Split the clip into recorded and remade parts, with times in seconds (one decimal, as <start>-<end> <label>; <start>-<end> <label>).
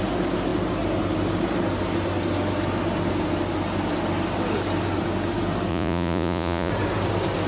0.0-5.7 recorded; 5.7-6.7 remade; 6.7-7.5 recorded